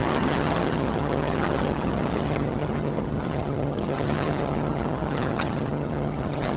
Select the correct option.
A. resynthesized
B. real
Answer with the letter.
A